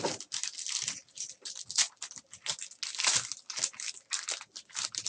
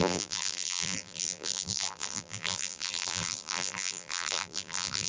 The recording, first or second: first